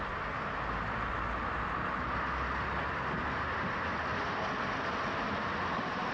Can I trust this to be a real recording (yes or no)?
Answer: yes